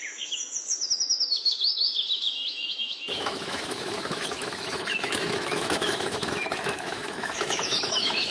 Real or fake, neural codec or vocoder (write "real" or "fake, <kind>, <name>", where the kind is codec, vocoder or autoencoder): fake, autoencoder, DAC-VAE